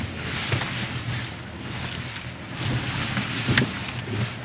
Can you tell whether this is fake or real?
real